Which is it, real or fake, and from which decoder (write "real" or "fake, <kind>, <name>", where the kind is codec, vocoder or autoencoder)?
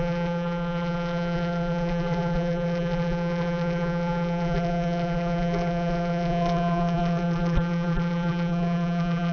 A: fake, vocoder, BigVGAN v2